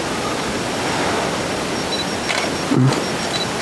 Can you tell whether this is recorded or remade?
recorded